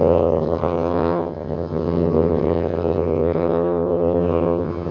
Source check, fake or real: fake